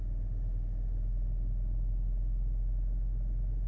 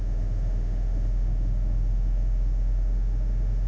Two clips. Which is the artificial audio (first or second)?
second